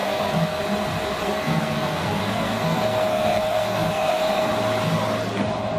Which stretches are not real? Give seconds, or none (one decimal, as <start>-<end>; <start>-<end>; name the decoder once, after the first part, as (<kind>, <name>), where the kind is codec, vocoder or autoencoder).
0.0-0.6 (codec, SNAC); 1.2-4.5